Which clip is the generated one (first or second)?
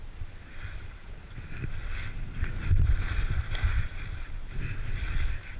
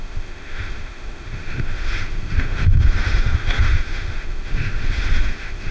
second